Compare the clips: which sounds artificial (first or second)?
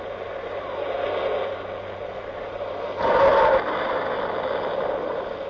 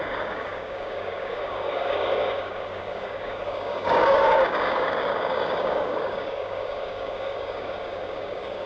second